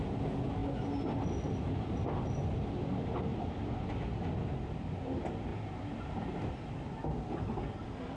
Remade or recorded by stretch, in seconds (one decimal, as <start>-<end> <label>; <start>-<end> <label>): 0.0-8.2 recorded